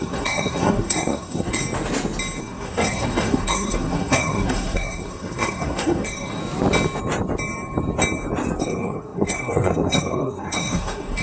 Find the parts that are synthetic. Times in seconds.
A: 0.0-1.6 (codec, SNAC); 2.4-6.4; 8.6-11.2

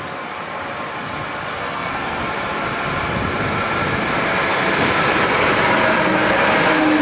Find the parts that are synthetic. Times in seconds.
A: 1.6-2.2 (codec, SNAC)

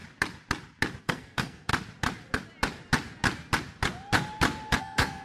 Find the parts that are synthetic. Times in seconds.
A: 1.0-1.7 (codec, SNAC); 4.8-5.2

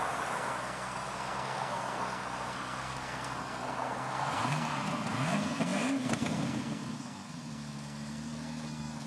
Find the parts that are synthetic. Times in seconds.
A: 0.0-9.1 (codec, SNAC)

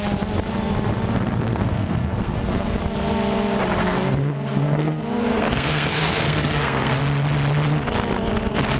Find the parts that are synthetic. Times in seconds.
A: 1.5-2.8 (codec, SNAC); 3.8-7.0

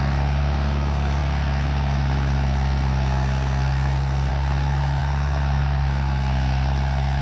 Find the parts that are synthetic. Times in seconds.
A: 0.0-7.2 (codec, SNAC)